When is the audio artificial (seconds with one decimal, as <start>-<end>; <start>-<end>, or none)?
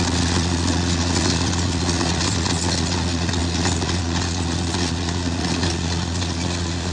0.0-6.9